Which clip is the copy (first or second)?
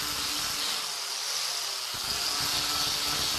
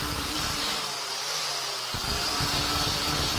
second